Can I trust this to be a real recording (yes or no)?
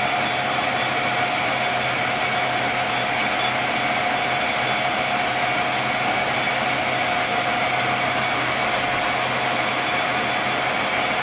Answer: yes